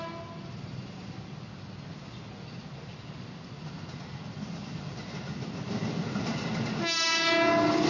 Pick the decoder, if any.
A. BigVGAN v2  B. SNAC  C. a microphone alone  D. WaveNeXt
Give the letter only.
C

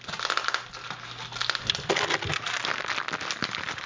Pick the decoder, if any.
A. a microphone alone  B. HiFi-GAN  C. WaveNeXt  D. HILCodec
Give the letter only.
A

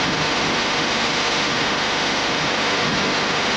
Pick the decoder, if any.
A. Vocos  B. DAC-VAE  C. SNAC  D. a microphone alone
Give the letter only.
B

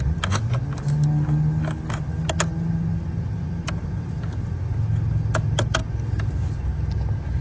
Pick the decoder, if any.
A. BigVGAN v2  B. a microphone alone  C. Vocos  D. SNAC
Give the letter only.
B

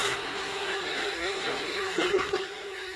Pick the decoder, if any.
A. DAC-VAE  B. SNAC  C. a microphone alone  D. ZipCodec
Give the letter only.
B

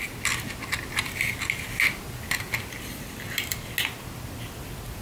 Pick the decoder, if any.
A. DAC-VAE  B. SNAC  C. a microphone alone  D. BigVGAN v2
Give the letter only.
C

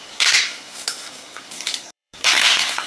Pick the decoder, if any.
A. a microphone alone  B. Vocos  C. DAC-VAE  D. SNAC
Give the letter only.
D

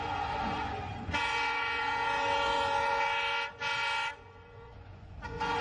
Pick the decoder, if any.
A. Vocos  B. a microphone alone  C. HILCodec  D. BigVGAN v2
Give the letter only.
A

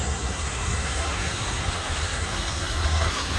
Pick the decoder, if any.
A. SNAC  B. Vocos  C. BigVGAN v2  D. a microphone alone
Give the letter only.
A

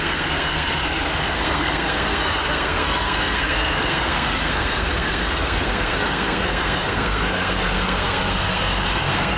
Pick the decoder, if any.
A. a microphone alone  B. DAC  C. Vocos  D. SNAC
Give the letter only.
D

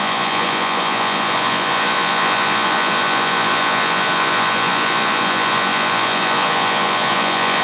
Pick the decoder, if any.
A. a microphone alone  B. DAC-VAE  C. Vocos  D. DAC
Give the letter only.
C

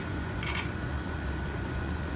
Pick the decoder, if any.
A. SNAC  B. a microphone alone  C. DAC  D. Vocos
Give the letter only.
D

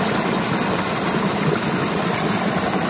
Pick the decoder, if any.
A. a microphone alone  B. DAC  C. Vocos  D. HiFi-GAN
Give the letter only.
A